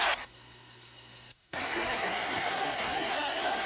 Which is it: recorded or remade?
remade